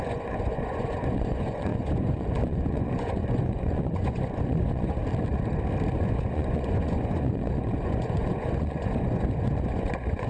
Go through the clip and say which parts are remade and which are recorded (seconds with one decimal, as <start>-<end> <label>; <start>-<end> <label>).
0.0-5.0 remade; 5.0-5.9 recorded; 5.9-10.3 remade